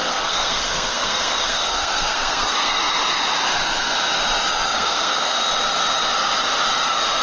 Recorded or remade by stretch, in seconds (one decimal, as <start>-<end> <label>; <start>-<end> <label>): 0.0-2.8 remade; 2.8-4.5 recorded; 4.5-5.5 remade; 5.5-7.2 recorded